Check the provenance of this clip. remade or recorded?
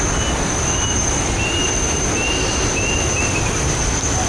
recorded